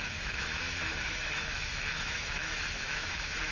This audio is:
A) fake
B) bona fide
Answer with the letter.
A